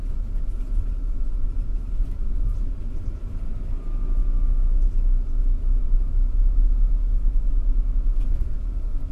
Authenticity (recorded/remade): recorded